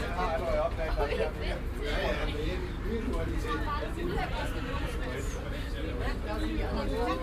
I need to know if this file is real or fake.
real